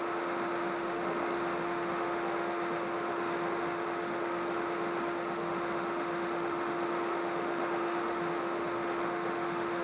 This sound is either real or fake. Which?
fake